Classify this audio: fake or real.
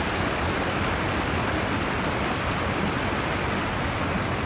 real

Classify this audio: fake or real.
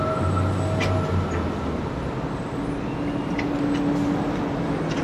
real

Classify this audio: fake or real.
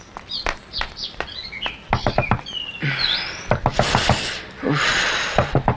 real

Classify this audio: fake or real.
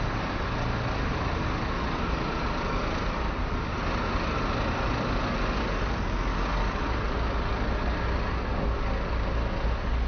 real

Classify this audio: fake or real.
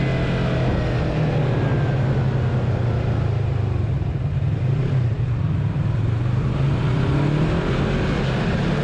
real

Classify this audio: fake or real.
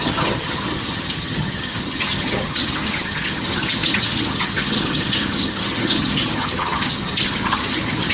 fake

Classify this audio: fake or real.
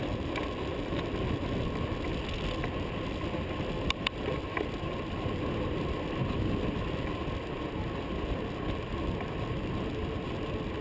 real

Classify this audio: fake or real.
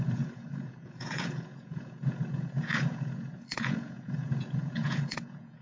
fake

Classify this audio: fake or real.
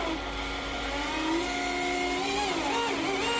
fake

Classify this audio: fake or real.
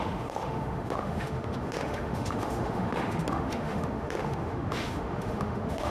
fake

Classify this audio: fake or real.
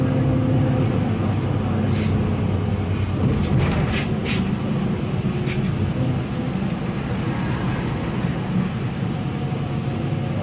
real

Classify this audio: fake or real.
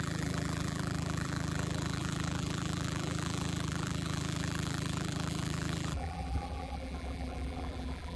fake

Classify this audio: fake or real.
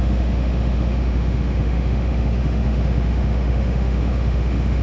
fake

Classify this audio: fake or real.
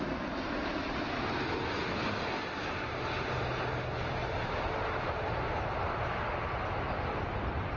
real